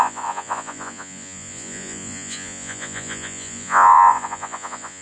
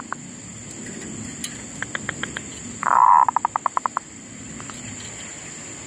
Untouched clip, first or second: second